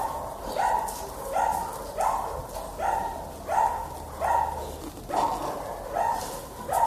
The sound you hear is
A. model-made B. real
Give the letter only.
B